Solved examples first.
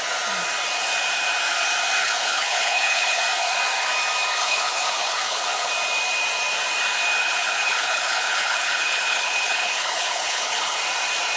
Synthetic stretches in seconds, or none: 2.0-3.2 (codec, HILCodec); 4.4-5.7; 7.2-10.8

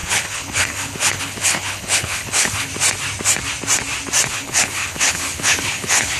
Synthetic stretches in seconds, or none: 0.0-2.7 (codec, HILCodec); 4.3-6.2

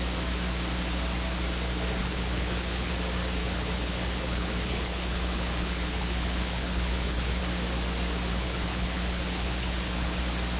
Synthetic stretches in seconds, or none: 2.0-2.9 (codec, HILCodec); 3.4-7.4; 8.3-10.2

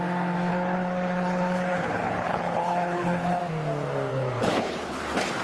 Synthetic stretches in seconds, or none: 0.5-3.4 (codec, HILCodec); 4.1-5.0